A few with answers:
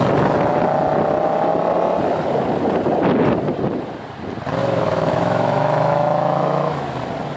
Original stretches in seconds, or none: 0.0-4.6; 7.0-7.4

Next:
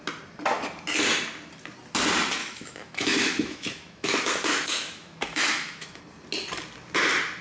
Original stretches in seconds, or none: 0.0-2.4; 6.0-7.4

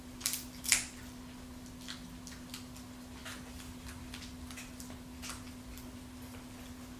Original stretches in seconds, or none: 0.0-7.0

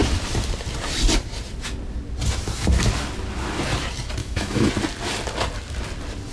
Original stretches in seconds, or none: 0.0-4.2; 4.7-6.3

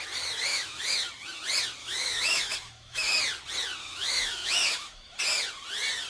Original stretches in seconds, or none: 0.0-0.5; 1.1-1.8; 3.2-3.8; 5.2-6.1

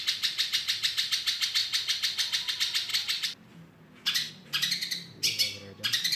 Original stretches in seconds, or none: 0.0-6.2

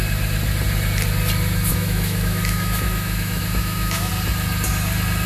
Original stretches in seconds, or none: 0.0-1.7; 4.1-5.3